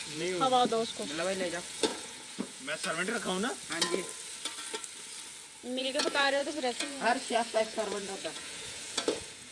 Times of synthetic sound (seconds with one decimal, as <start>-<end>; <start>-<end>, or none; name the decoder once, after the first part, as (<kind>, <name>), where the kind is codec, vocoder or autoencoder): 0.0-3.5 (vocoder, Vocos); 5.8-9.5